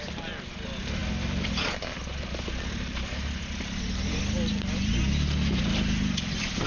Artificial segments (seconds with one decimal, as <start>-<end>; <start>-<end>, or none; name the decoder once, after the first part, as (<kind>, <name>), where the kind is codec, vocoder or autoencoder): none